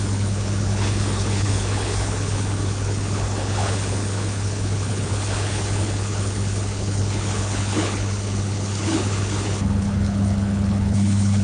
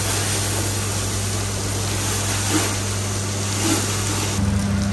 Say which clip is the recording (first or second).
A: second